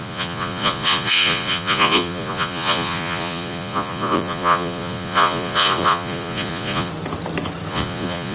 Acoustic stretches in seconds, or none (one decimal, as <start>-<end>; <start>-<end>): 6.9-7.7